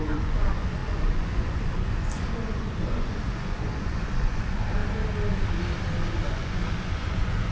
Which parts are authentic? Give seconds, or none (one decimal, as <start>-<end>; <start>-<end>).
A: 4.8-6.3